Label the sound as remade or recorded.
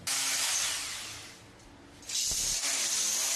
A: recorded